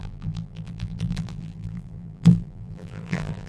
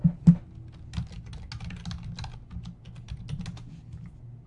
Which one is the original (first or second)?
second